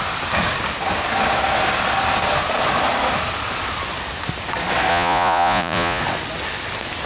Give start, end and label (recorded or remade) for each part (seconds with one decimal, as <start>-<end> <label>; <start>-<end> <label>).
0.0-4.9 recorded; 4.9-6.0 remade; 6.0-7.1 recorded